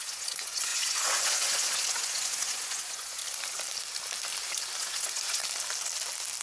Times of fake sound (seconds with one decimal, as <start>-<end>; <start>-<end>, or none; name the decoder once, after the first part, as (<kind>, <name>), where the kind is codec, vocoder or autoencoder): 0.0-3.2 (vocoder, Vocos); 4.8-5.4